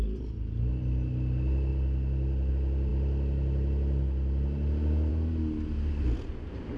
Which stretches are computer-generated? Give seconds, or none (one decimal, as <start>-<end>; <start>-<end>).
none